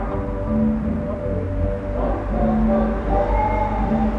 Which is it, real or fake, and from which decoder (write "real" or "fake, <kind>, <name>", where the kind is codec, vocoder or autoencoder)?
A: real